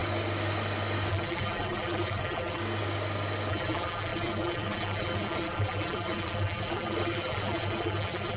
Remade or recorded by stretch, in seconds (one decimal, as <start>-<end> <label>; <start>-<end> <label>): 0.0-1.1 recorded; 1.1-2.6 remade; 2.6-3.5 recorded; 3.5-8.4 remade